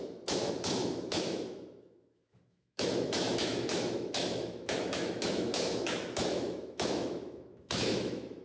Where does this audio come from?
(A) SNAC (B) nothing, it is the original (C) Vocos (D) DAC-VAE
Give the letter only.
D